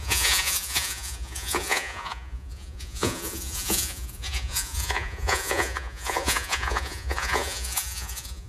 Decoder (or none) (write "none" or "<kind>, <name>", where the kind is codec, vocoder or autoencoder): vocoder, Vocos